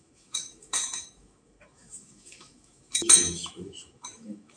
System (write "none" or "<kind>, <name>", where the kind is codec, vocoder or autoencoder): autoencoder, DAC-VAE